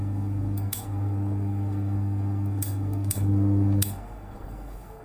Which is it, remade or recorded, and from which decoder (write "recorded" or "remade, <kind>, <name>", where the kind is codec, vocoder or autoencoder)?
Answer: remade, codec, SNAC